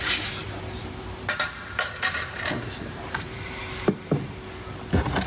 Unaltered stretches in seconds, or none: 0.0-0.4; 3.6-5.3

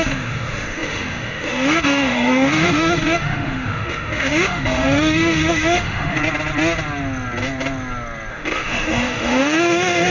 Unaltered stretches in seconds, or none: 6.2-8.3

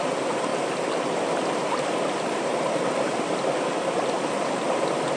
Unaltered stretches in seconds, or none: 0.0-5.2

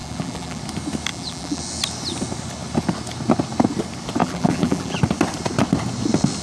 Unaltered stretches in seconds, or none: 0.6-1.1; 1.6-4.2; 5.0-6.4